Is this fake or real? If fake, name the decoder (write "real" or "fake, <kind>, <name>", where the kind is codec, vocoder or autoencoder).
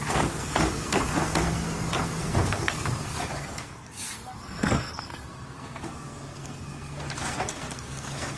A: fake, codec, SNAC